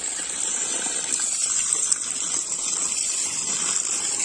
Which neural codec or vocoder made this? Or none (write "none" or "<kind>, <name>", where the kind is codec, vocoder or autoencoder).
none